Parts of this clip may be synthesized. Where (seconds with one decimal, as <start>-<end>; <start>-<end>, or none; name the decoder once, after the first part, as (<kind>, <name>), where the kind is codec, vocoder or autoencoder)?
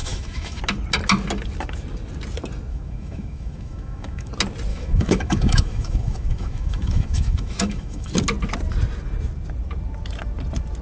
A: 0.0-0.6 (autoencoder, DAC-VAE); 2.7-4.3; 4.7-8.1